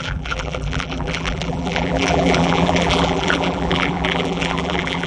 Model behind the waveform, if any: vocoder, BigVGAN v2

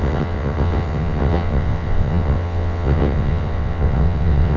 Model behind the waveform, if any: vocoder, WaveNeXt